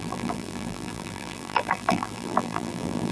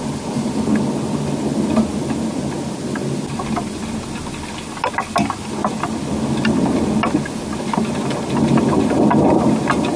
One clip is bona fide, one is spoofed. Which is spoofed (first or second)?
first